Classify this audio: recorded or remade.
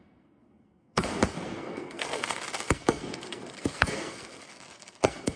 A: remade